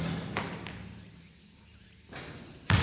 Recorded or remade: recorded